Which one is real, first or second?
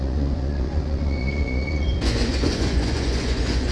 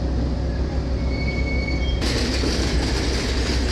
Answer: second